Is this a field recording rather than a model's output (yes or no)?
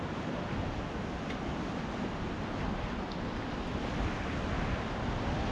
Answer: yes